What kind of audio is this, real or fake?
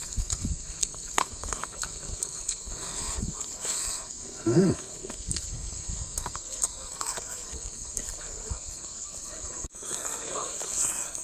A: fake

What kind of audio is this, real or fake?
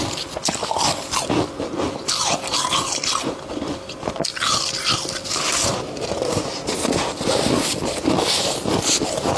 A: real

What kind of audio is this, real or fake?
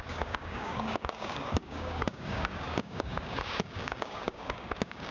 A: fake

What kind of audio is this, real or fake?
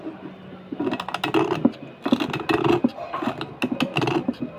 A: real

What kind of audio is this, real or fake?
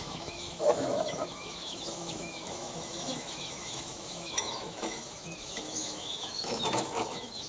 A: fake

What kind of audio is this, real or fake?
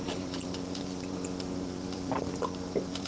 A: fake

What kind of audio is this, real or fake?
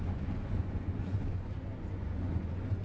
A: fake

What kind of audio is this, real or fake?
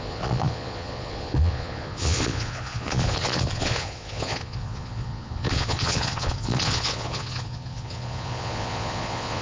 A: fake